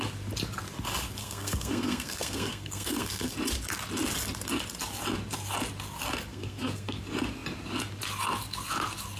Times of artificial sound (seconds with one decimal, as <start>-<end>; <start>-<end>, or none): 1.2-3.3; 6.3-7.0